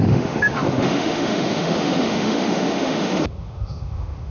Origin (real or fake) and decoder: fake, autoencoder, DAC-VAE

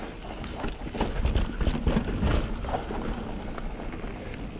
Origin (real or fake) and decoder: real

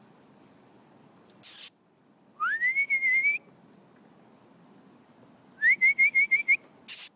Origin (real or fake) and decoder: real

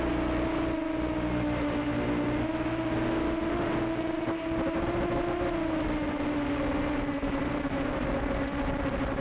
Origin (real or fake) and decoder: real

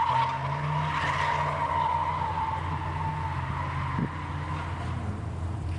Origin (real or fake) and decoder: real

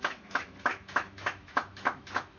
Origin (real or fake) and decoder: fake, autoencoder, DAC-VAE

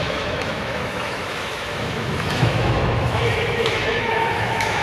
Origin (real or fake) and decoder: fake, autoencoder, DAC-VAE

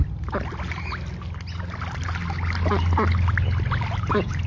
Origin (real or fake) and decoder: real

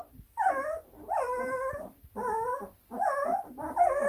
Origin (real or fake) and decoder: real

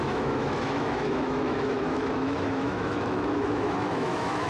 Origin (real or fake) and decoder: fake, autoencoder, DAC-VAE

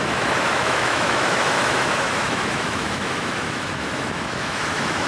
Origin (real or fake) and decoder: fake, autoencoder, DAC-VAE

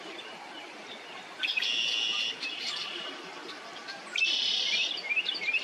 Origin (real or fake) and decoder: real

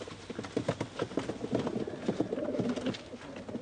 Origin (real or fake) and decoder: real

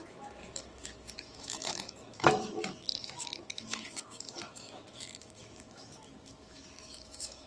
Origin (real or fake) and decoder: fake, autoencoder, DAC-VAE